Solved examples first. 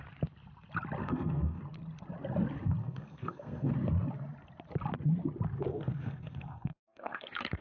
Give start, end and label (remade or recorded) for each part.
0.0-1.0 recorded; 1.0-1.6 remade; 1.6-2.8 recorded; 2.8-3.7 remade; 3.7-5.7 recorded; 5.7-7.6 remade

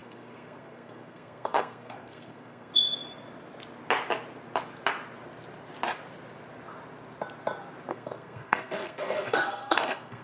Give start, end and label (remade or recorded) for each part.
0.0-2.7 remade; 2.7-7.9 recorded; 7.9-10.2 remade

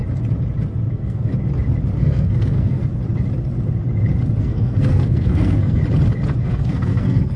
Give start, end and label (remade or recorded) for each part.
0.0-0.9 recorded; 0.9-1.3 remade; 1.3-2.0 recorded; 2.0-2.8 remade; 2.8-4.4 recorded; 4.4-5.8 remade; 5.8-6.4 recorded; 6.4-7.4 remade

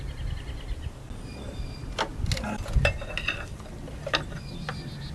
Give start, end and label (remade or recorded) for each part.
0.0-5.1 recorded

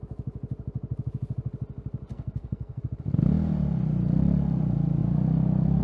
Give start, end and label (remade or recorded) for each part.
0.0-2.1 recorded; 2.1-2.8 remade; 2.8-5.8 recorded

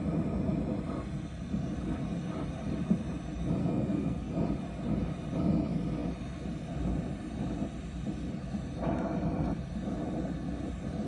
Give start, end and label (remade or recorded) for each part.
0.0-3.6 recorded; 3.6-4.3 remade; 4.3-11.1 recorded

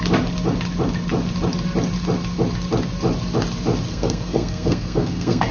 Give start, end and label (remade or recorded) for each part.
0.0-3.9 recorded; 3.9-5.5 remade

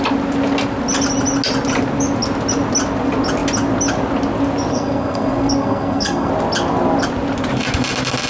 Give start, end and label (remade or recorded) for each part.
0.0-4.7 recorded; 4.7-6.3 remade; 6.3-8.3 recorded